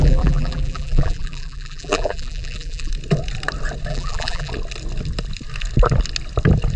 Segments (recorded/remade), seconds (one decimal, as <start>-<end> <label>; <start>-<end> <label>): 0.0-2.9 remade; 2.9-3.9 recorded; 3.9-4.5 remade; 4.5-6.8 recorded